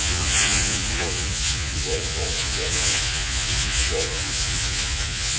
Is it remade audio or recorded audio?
remade